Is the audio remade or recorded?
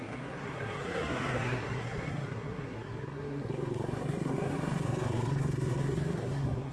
remade